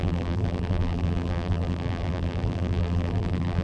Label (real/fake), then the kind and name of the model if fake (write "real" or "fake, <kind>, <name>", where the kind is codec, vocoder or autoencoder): fake, vocoder, BigVGAN v2